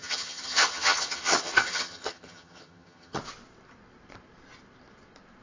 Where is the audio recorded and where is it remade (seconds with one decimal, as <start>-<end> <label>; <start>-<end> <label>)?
0.0-3.2 remade; 3.2-5.4 recorded

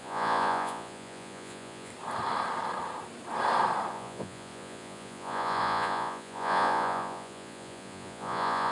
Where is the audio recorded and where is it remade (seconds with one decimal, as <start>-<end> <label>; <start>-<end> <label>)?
0.0-1.9 remade; 1.9-3.9 recorded; 3.9-8.7 remade

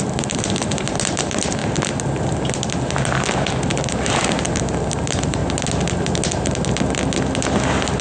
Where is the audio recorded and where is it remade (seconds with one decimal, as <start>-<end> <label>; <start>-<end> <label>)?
0.0-1.6 remade; 1.6-4.2 recorded; 4.2-5.4 remade; 5.4-8.0 recorded

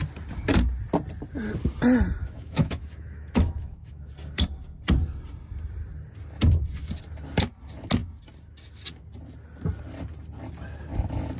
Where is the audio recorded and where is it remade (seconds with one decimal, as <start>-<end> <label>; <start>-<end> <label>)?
0.0-2.2 recorded; 2.2-4.1 remade; 4.1-11.4 recorded

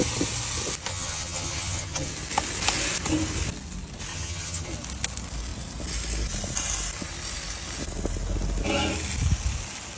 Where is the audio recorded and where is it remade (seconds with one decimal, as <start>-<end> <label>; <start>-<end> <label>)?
0.0-0.9 recorded; 0.9-2.1 remade; 2.1-4.1 recorded; 4.1-4.7 remade; 4.7-10.0 recorded

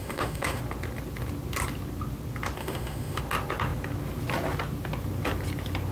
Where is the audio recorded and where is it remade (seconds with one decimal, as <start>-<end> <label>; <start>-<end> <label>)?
0.0-0.6 remade; 0.6-2.6 recorded; 2.6-3.2 remade; 3.2-5.9 recorded

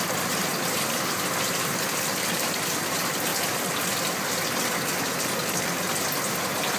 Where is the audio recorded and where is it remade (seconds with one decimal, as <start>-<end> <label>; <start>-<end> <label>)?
0.0-3.3 remade; 3.3-6.2 recorded; 6.2-6.8 remade